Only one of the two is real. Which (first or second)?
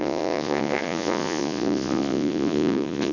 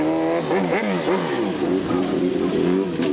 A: second